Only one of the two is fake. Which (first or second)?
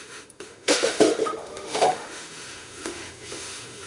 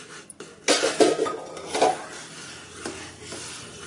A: first